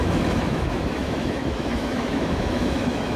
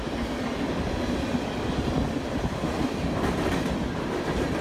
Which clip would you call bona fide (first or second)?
second